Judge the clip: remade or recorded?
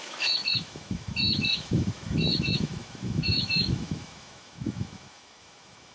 remade